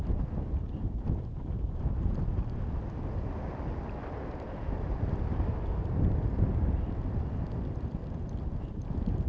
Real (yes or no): yes